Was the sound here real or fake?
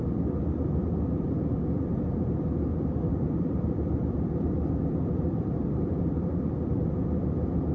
fake